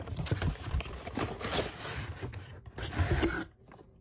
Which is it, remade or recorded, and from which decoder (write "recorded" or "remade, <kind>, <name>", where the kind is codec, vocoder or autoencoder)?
recorded